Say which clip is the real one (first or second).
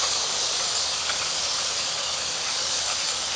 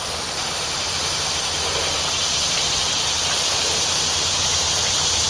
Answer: second